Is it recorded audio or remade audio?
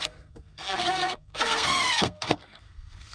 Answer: remade